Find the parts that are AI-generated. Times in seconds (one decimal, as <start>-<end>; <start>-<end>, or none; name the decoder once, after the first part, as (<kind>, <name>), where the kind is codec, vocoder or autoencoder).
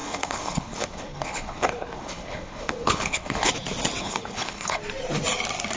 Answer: 0.0-3.5 (codec, HILCodec); 4.0-4.8